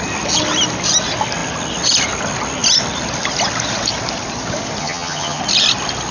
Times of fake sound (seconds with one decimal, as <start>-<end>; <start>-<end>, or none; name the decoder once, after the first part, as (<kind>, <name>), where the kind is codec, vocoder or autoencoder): 4.8-5.4 (vocoder, HiFi-GAN)